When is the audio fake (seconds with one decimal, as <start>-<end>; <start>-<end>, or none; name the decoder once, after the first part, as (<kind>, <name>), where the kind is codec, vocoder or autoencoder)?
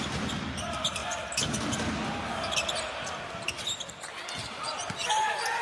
0.0-1.0 (vocoder, BigVGAN v2); 4.0-5.6